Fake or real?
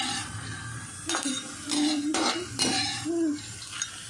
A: real